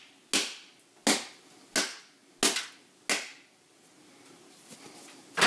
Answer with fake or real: real